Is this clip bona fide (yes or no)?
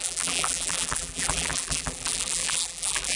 no